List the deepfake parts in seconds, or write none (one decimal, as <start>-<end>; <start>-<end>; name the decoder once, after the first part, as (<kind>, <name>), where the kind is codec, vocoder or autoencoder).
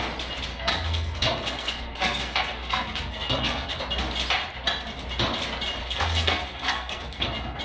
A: 0.5-3.8 (codec, SNAC); 5.8-7.6